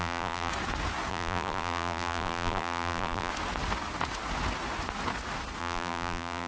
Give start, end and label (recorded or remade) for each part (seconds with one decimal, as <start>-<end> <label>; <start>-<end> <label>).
0.0-0.5 remade; 0.5-1.1 recorded; 1.1-3.3 remade; 3.3-5.6 recorded; 5.6-6.5 remade